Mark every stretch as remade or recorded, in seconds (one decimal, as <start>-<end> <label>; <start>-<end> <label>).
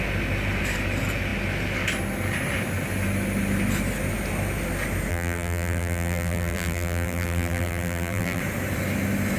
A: 0.0-5.1 recorded; 5.1-8.4 remade; 8.4-9.4 recorded